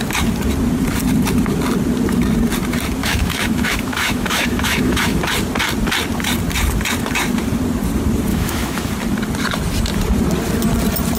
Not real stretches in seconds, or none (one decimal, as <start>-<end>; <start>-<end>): 3.0-5.2; 8.3-8.9